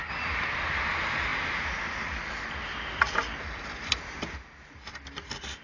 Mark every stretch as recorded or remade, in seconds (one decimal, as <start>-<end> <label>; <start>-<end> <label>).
0.0-5.6 recorded